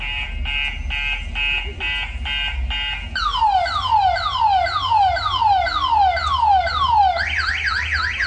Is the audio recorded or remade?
recorded